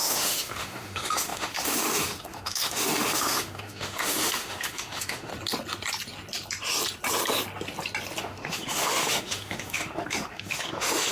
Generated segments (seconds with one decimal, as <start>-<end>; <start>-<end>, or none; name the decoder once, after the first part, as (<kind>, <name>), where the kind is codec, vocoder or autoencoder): 0.0-5.3 (autoencoder, DAC-VAE); 8.2-11.1